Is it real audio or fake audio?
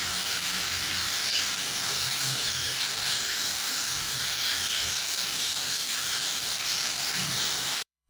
fake